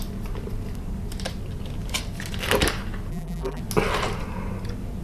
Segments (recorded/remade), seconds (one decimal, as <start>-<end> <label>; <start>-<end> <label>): 0.0-3.1 recorded; 3.1-3.6 remade; 3.6-5.0 recorded